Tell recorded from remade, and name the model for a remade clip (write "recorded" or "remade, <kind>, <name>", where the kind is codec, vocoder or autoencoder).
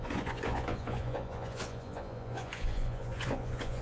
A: remade, vocoder, Vocos